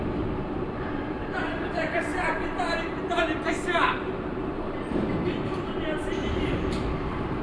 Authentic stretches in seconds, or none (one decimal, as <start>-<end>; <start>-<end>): none